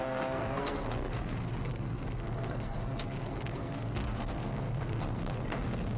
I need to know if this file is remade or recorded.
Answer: remade